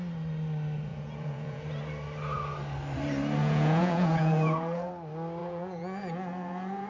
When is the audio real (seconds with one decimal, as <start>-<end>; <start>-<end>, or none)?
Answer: 0.0-0.9; 1.6-3.4; 4.9-5.4